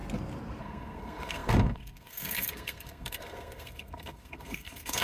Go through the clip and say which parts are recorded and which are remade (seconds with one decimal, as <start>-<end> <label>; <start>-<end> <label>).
0.0-0.6 recorded; 0.6-5.0 remade